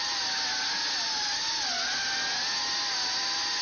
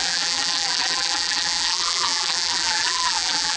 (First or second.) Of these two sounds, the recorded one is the first